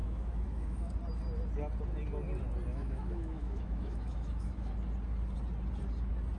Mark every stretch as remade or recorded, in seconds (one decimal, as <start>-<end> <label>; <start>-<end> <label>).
0.0-0.9 remade; 0.9-2.7 recorded; 2.7-4.7 remade; 4.7-6.4 recorded